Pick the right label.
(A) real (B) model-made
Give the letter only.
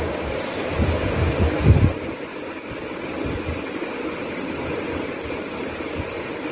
A